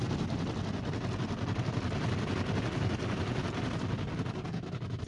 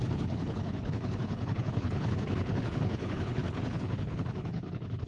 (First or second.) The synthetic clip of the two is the second